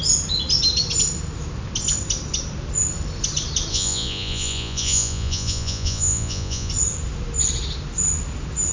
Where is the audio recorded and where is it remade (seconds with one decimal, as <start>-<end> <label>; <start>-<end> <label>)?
0.0-3.7 recorded; 3.7-6.7 remade; 6.7-8.7 recorded